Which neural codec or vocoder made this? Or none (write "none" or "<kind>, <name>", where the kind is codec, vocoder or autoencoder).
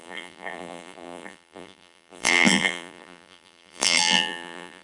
vocoder, BigVGAN v2